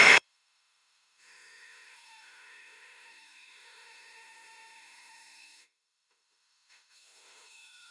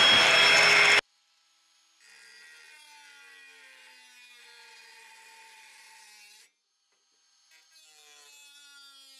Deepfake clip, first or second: first